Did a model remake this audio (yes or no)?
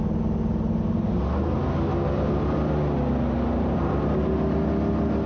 no